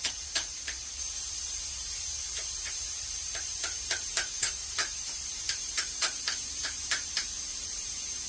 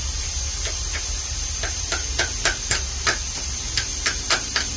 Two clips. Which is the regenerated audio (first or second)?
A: first